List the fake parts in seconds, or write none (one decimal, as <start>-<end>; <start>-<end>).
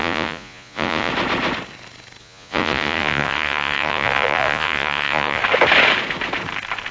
0.0-1.1; 2.2-5.4